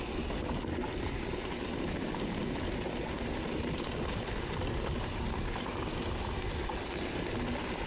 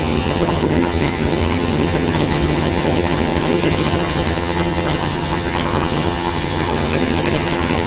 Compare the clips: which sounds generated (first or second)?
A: second